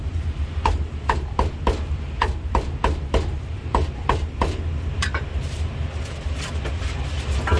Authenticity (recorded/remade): remade